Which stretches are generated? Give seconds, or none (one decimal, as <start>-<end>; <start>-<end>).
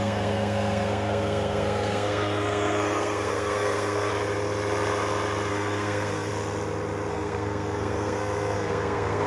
0.0-4.1; 5.5-6.3; 7.1-9.3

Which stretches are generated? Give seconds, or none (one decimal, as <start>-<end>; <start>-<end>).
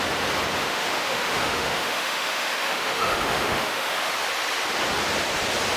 0.6-4.1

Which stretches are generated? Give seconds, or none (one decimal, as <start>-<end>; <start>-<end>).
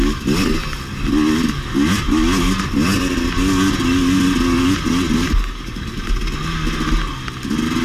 5.2-6.0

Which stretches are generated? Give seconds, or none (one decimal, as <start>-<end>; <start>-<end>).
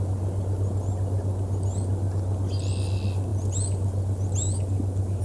none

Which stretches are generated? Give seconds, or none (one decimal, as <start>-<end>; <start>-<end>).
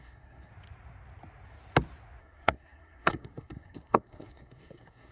0.0-0.5; 2.2-5.1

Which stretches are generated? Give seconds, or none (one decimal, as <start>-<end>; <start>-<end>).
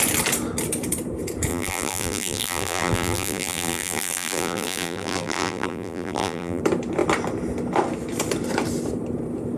1.5-6.6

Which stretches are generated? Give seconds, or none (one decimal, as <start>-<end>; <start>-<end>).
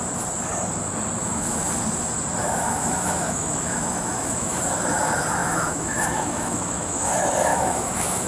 1.2-1.7; 2.4-4.6; 5.4-7.1; 7.5-8.3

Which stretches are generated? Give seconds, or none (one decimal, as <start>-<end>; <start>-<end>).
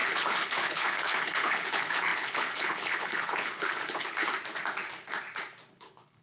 0.0-4.3; 5.7-6.2